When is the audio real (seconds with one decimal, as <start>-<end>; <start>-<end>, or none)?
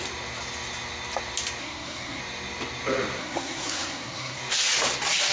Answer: 0.0-1.6; 2.2-3.2; 4.4-5.3